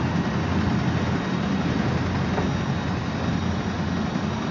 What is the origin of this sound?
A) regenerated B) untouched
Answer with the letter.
B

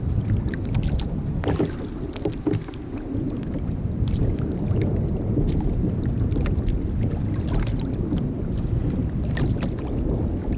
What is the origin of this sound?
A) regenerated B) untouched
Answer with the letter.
B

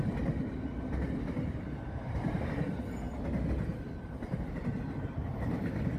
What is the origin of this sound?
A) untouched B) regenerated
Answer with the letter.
A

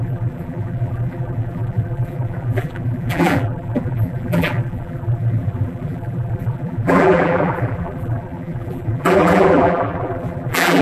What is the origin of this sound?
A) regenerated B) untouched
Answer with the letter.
A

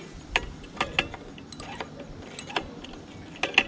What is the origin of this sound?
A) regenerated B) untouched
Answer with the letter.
B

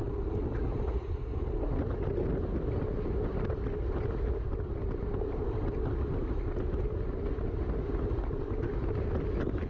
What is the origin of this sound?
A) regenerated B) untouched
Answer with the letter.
B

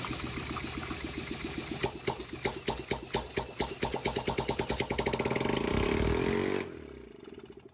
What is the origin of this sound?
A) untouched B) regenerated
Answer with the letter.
A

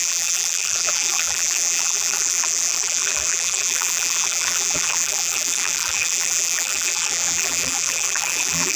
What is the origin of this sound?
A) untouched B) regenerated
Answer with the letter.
B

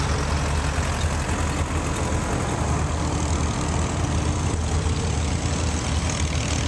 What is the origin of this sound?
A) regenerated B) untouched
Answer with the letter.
B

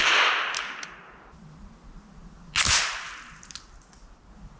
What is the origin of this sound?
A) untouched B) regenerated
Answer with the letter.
A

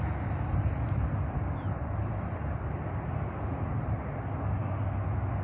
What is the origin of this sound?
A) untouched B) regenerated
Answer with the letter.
A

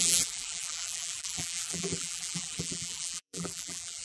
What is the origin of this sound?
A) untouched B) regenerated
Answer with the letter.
B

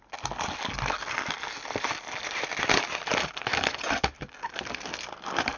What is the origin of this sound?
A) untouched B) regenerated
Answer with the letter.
A